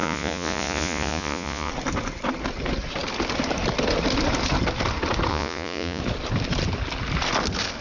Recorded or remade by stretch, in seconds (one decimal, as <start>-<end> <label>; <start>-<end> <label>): 0.0-1.7 remade; 1.7-5.3 recorded; 5.3-6.0 remade; 6.0-7.8 recorded